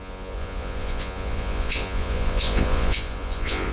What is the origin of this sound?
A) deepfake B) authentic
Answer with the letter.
A